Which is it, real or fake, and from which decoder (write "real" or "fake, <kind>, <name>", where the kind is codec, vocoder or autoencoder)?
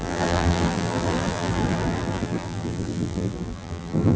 fake, vocoder, BigVGAN v2